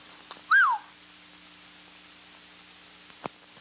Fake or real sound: real